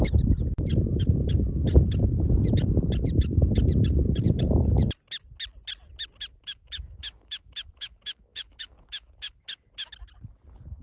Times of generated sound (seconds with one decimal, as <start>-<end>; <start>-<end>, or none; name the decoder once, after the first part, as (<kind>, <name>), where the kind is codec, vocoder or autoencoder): 6.4-9.9 (autoencoder, DAC-VAE)